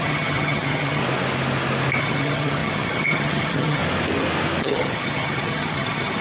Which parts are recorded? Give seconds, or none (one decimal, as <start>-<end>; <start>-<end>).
1.0-2.0; 3.8-4.6